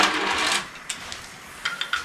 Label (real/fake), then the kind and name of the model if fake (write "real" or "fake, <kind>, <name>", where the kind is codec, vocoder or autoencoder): real